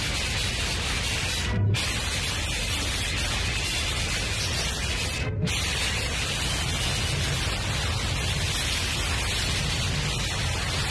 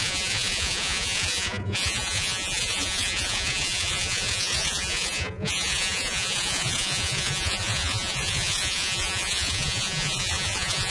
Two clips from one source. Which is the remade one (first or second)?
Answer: second